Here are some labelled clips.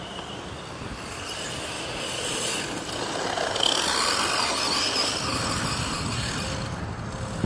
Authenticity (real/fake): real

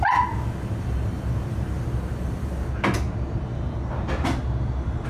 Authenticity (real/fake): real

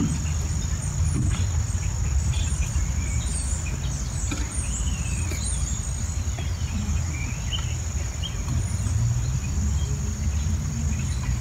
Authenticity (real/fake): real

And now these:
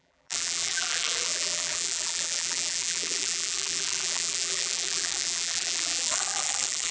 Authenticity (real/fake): fake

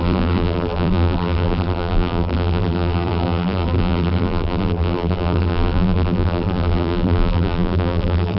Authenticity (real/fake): fake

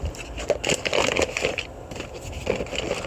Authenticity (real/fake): real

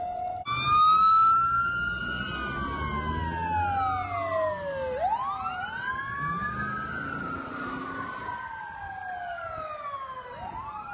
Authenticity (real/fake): real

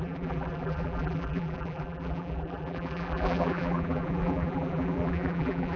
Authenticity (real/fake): fake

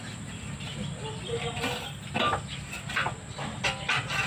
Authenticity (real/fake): real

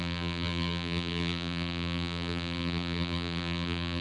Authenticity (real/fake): fake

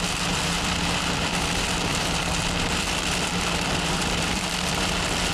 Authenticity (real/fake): fake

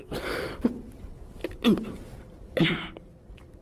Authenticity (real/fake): real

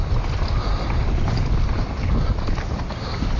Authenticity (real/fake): fake